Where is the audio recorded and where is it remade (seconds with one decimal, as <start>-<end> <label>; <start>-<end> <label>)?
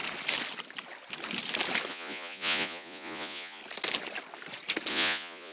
0.0-1.9 recorded; 1.9-3.6 remade; 3.6-4.9 recorded; 4.9-5.5 remade